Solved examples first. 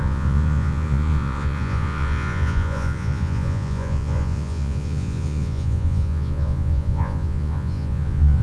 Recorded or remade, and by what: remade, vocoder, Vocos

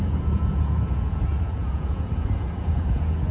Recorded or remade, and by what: remade, vocoder, Vocos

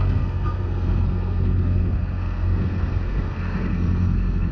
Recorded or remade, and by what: remade, codec, SNAC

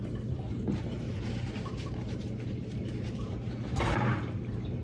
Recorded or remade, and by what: remade, vocoder, BigVGAN v2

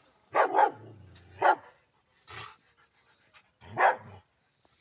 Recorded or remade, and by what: recorded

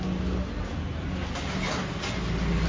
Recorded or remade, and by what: recorded